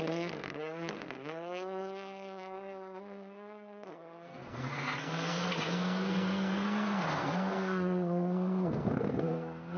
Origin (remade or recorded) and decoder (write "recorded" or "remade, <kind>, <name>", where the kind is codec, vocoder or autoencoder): remade, codec, SNAC